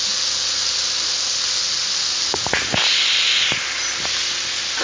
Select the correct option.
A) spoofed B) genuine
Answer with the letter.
B